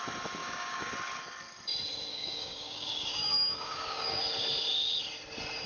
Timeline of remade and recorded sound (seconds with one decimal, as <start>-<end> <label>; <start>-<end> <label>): 0.0-0.4 recorded; 0.4-0.9 remade; 0.9-2.1 recorded; 2.1-4.2 remade; 4.2-5.7 recorded